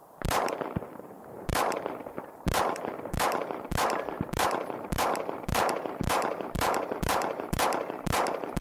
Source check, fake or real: fake